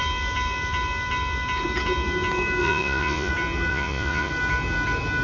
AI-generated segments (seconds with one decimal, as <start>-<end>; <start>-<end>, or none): 2.6-3.3; 3.7-4.3

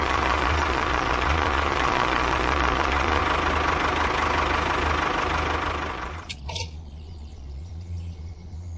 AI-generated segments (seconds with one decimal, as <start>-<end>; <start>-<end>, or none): 0.0-3.2; 5.9-8.8

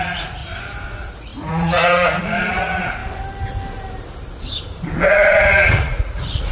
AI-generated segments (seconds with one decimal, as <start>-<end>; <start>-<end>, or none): 0.0-0.4; 0.9-3.0; 5.1-6.5